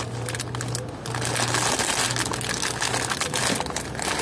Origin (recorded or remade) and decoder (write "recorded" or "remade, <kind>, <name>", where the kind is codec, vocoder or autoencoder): recorded